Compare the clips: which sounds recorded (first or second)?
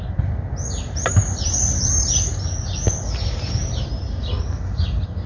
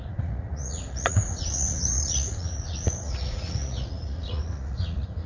first